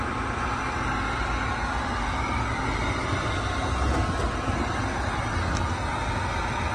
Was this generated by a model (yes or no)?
no